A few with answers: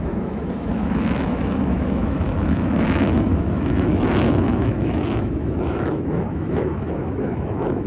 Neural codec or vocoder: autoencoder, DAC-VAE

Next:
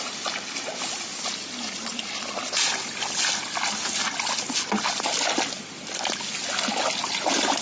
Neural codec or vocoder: none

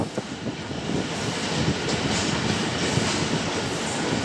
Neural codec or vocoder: none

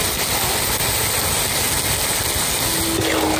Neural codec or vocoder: none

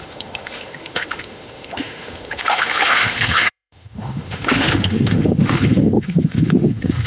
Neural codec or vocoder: autoencoder, DAC-VAE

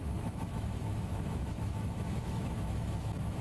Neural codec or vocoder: autoencoder, DAC-VAE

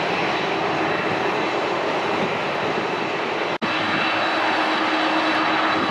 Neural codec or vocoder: none